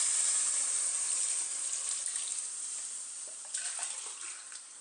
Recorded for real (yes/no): no